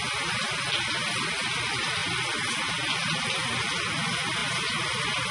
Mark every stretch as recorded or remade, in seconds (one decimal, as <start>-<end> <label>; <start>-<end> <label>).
0.0-5.3 recorded